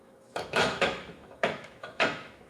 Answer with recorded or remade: remade